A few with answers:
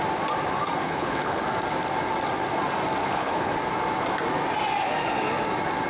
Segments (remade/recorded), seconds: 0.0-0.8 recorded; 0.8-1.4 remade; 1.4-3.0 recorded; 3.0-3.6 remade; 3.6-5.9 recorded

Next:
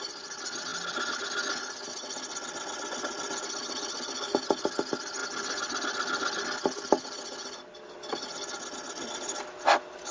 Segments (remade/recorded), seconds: 0.0-10.1 recorded

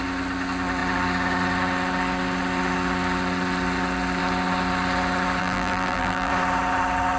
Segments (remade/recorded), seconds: 0.0-5.4 recorded; 5.4-6.3 remade; 6.3-7.2 recorded